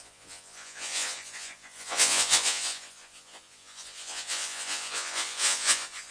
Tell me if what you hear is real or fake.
fake